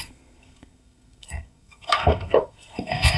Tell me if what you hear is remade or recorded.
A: remade